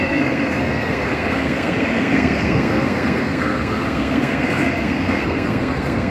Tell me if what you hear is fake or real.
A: fake